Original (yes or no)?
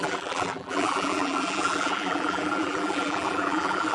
no